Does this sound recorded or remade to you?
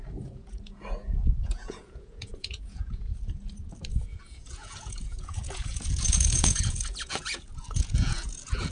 remade